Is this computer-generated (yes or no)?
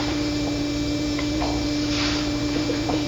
yes